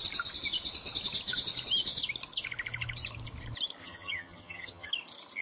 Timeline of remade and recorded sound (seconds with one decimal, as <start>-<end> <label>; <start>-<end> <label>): 0.0-3.8 recorded; 3.8-4.9 remade; 4.9-5.4 recorded